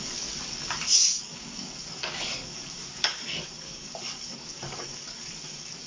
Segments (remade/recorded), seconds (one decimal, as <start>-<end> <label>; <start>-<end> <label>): 0.0-5.9 remade